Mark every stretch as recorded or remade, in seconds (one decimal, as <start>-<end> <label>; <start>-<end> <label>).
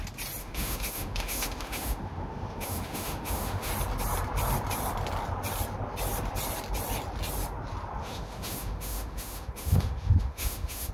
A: 0.0-0.4 recorded; 0.4-3.7 remade; 3.7-8.0 recorded; 8.0-10.9 remade